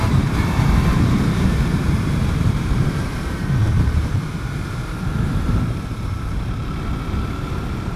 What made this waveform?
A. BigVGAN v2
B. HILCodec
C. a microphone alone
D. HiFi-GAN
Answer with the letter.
A